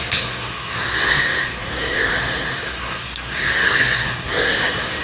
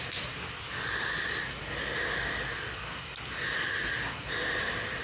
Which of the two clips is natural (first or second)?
second